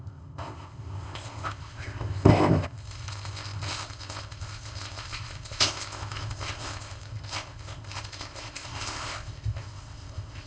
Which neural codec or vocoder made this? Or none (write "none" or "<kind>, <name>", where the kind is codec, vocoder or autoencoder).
codec, ZipCodec